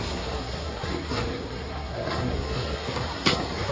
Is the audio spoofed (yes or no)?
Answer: yes